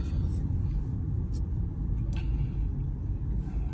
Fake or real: real